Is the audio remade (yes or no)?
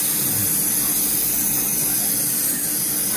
no